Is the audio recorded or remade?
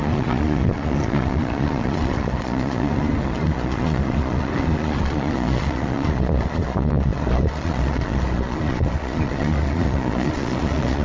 remade